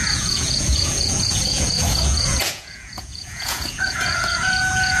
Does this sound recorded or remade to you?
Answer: remade